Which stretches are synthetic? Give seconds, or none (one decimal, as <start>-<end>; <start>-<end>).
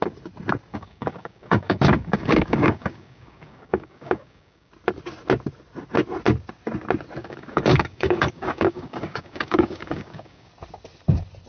0.7-4.7; 7.2-10.5